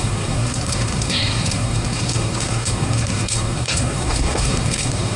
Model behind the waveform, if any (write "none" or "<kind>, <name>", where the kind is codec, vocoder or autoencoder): codec, SNAC